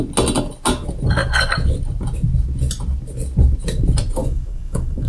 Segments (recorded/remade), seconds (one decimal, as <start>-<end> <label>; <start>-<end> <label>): 0.0-4.2 recorded; 4.2-5.1 remade